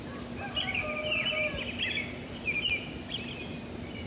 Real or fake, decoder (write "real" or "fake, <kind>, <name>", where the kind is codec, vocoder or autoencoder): real